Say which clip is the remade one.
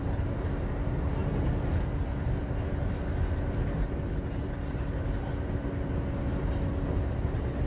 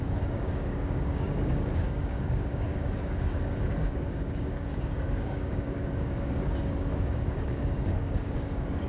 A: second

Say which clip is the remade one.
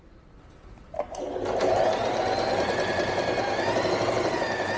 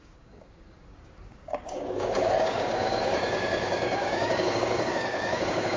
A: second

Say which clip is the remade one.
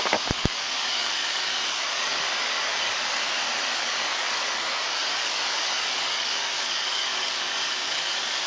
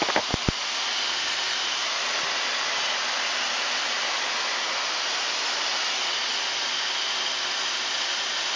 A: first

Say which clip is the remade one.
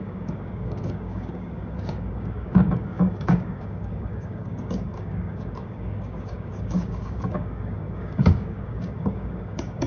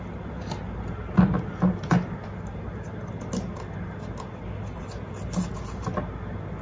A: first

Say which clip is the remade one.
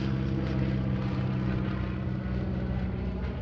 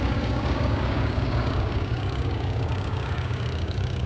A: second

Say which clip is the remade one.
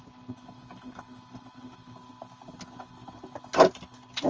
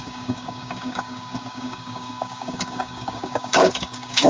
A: second